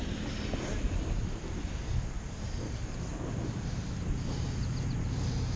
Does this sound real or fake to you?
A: real